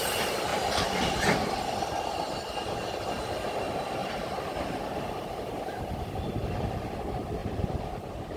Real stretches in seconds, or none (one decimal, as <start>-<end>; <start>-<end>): 0.0-0.5; 1.2-4.0; 5.8-7.4